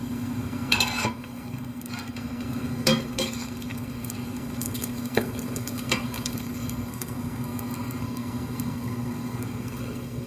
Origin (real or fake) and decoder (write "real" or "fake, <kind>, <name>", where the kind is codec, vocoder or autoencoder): fake, codec, SNAC